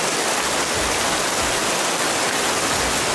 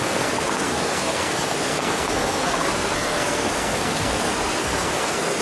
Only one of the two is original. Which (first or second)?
first